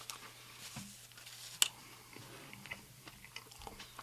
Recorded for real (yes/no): yes